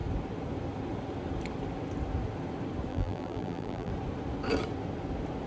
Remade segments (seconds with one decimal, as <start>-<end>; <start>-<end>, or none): 2.9-3.9